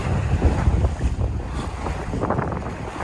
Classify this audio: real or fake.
real